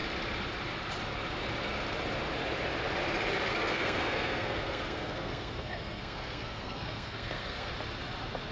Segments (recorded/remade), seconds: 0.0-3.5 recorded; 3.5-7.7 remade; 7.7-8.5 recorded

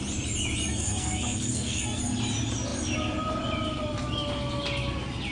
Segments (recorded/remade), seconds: 0.0-0.7 recorded; 0.7-2.0 remade; 2.0-5.3 recorded

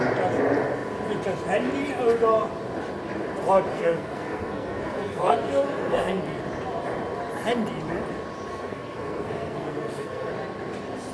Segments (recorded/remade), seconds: 0.0-3.7 recorded; 3.7-6.4 remade; 6.4-8.5 recorded; 8.5-10.3 remade; 10.3-11.1 recorded